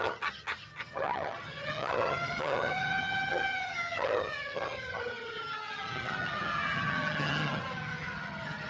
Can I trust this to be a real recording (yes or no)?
no